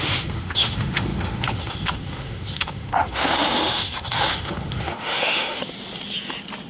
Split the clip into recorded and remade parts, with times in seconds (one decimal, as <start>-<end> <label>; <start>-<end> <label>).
0.0-5.6 remade; 5.6-6.7 recorded